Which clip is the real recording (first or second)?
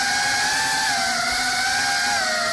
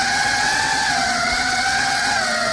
first